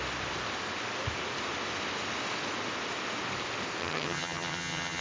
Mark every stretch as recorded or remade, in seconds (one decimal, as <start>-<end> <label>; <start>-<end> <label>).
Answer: 0.0-3.8 recorded; 3.8-5.0 remade